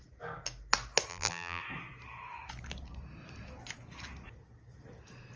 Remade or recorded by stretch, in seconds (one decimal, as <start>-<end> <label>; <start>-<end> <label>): 0.0-1.1 recorded; 1.1-1.6 remade; 1.6-5.4 recorded